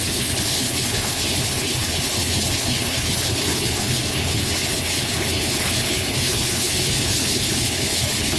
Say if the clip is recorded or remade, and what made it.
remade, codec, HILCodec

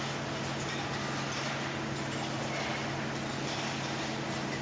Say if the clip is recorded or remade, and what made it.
recorded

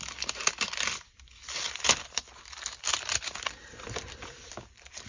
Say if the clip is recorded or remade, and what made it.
recorded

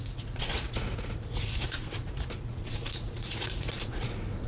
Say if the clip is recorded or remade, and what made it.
remade, vocoder, Vocos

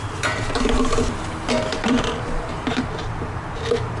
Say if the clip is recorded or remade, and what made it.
remade, vocoder, BigVGAN v2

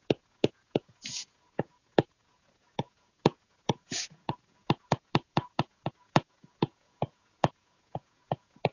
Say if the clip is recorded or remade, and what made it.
remade, vocoder, Vocos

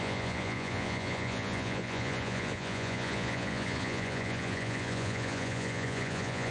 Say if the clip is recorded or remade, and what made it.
remade, vocoder, Vocos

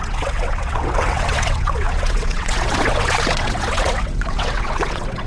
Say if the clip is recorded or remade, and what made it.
remade, vocoder, WaveNeXt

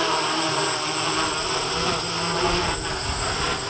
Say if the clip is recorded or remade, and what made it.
recorded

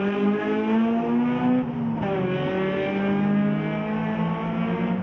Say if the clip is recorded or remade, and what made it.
recorded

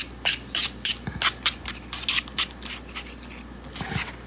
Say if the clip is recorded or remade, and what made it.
recorded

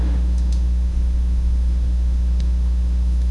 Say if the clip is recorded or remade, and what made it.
remade, autoencoder, DAC-VAE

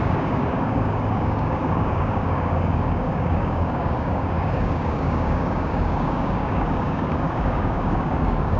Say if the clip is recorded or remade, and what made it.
remade, codec, DAC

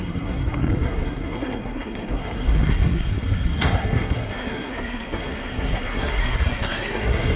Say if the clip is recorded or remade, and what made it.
remade, codec, SNAC